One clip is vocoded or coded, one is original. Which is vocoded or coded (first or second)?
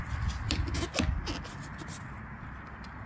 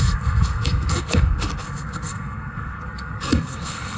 second